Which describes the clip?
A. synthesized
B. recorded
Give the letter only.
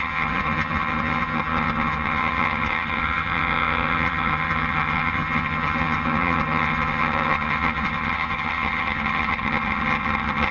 A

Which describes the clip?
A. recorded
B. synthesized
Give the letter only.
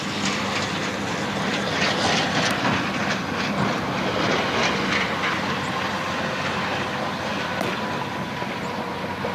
A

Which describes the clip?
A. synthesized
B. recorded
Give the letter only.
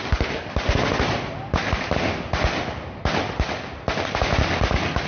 B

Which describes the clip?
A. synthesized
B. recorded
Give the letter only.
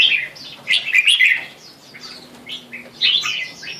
B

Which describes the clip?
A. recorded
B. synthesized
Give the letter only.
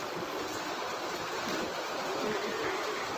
A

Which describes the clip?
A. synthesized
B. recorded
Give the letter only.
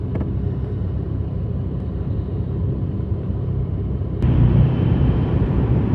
A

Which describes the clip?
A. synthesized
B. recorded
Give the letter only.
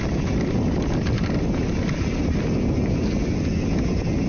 B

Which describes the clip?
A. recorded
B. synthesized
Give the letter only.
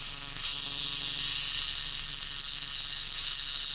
B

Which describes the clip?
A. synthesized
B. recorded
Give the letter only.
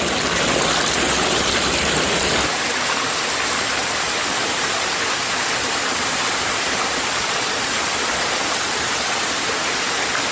B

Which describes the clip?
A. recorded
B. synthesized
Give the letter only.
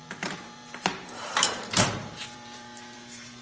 B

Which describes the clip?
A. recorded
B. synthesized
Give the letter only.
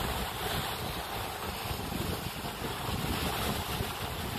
A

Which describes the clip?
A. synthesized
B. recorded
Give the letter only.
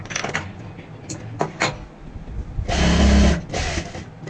B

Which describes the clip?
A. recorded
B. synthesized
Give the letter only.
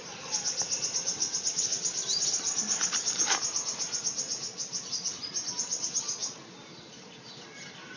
A